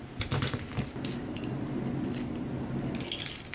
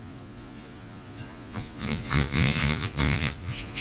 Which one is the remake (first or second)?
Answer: second